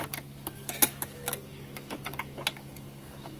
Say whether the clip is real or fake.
fake